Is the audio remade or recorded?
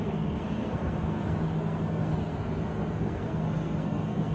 remade